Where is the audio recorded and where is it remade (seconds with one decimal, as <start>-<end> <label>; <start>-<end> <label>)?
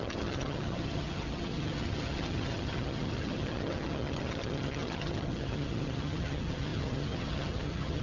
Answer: 0.0-8.0 remade